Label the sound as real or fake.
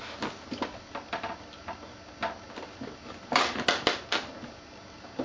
real